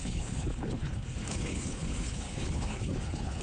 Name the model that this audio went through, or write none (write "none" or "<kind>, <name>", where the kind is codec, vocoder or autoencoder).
codec, HILCodec